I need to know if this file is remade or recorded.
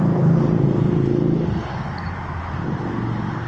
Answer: recorded